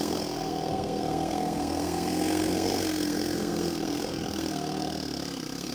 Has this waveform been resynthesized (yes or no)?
yes